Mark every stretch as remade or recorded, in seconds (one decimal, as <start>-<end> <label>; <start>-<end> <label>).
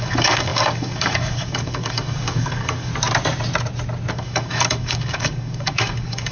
0.0-2.9 remade; 2.9-4.1 recorded; 4.1-6.3 remade